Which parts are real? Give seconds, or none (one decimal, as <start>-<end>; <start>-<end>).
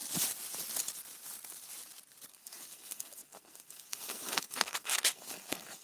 0.0-2.3